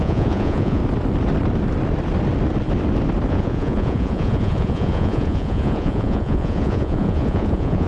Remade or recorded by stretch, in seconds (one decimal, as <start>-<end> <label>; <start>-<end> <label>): 0.0-0.8 remade; 0.8-3.3 recorded; 3.3-7.9 remade